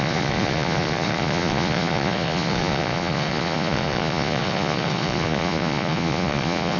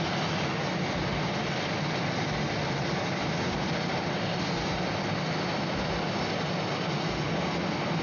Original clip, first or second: second